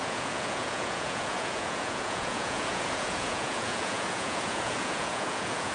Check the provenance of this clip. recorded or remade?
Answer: remade